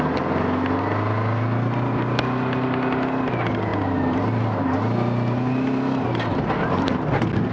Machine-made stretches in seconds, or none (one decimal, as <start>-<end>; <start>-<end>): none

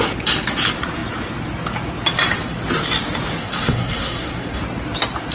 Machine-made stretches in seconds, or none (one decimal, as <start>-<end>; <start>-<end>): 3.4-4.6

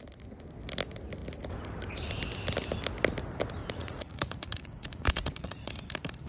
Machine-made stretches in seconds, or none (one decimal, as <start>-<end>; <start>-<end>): 3.6-5.7

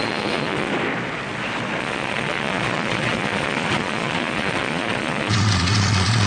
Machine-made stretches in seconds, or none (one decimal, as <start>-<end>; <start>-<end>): 0.0-0.7; 1.8-6.3

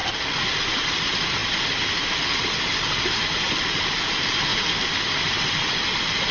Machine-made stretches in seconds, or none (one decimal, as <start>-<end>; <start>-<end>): none